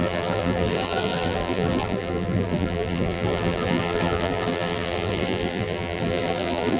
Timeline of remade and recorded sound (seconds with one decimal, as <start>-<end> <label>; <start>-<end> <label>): 0.0-6.8 remade